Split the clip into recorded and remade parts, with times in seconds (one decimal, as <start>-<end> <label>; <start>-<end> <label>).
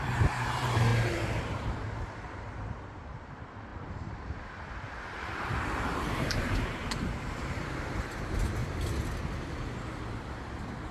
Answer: 0.0-6.8 remade; 6.8-7.4 recorded; 7.4-8.6 remade; 8.6-10.9 recorded